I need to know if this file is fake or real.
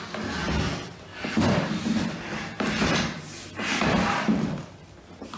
real